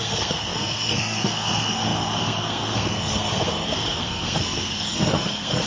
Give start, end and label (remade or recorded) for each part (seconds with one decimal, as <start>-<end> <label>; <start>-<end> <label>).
0.0-5.7 remade